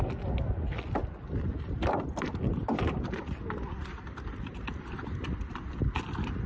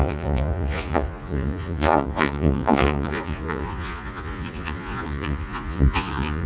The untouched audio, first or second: first